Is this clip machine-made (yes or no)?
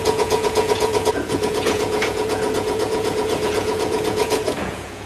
yes